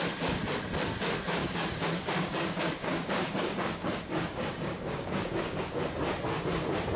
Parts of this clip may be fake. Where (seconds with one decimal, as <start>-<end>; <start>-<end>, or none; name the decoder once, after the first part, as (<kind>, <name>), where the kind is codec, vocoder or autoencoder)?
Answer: 1.4-5.6 (codec, DAC)